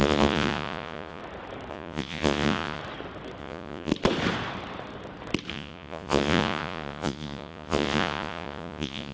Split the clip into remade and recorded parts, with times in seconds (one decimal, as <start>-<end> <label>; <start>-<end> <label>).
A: 0.0-1.2 remade; 1.2-1.7 recorded; 1.7-2.8 remade; 2.8-3.4 recorded; 3.4-3.9 remade; 3.9-5.5 recorded; 5.5-9.1 remade